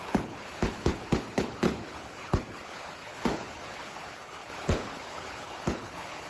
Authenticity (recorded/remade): remade